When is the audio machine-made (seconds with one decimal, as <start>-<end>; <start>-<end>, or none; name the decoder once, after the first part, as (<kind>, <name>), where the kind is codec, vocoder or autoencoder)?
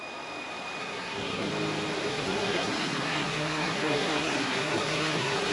0.8-1.5 (codec, SNAC); 2.1-5.5